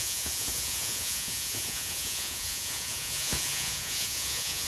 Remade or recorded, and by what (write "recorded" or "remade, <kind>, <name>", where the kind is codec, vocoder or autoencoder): remade, vocoder, Vocos